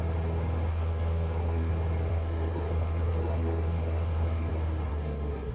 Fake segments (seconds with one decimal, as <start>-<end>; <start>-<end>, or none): 0.7-1.7; 2.1-4.5; 4.9-5.5